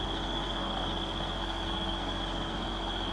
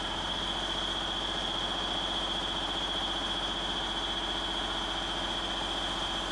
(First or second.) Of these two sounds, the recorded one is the second